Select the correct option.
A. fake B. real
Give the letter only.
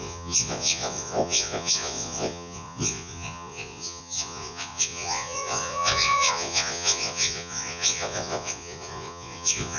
A